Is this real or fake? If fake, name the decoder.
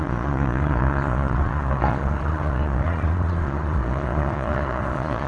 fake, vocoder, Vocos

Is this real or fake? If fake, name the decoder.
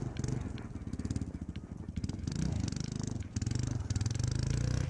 real